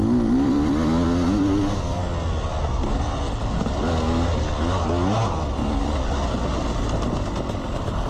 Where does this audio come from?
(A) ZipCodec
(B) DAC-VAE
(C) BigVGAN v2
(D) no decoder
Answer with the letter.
D